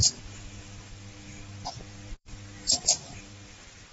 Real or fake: fake